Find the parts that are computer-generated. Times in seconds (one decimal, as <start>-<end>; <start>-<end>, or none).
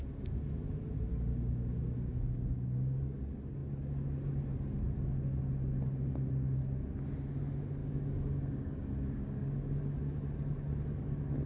1.1-3.2; 7.8-9.8